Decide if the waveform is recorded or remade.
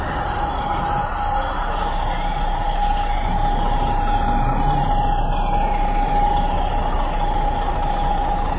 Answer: recorded